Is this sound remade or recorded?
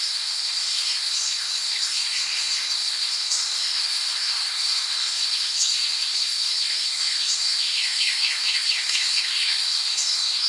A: remade